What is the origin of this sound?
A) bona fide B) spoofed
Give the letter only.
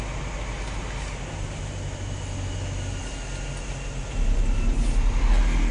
A